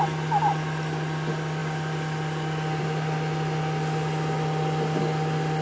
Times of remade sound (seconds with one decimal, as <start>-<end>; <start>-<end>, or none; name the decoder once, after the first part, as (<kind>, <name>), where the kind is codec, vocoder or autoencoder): none